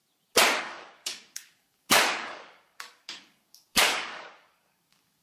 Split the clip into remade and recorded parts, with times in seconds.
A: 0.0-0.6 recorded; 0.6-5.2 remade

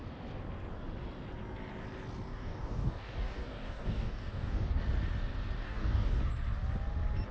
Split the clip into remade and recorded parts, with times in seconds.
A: 0.0-2.3 recorded; 2.3-4.8 remade; 4.8-5.6 recorded; 5.6-6.2 remade; 6.2-7.3 recorded

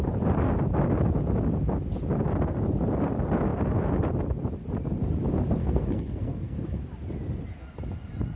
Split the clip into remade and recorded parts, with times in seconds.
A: 0.0-5.6 recorded; 5.6-6.8 remade; 6.8-8.4 recorded

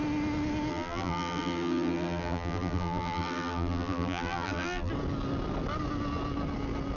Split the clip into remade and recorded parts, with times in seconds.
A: 0.0-0.7 recorded; 0.7-4.9 remade; 4.9-7.0 recorded

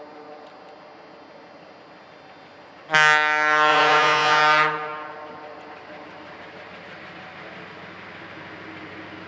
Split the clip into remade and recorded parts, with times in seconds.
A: 0.0-3.7 recorded; 3.7-4.4 remade; 4.4-9.3 recorded

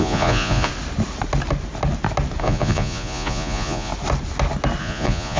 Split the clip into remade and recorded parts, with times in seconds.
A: 0.0-0.7 remade; 0.7-2.4 recorded; 2.4-3.9 remade; 3.9-4.8 recorded; 4.8-5.4 remade

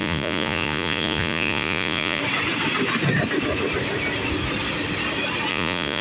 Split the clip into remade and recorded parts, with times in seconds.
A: 0.0-2.2 remade; 2.2-5.5 recorded; 5.5-6.0 remade